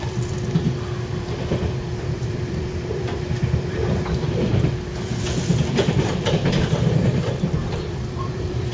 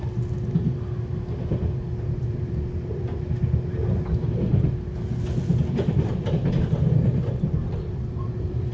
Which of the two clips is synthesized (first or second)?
first